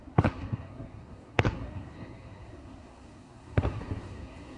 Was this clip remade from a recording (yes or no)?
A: yes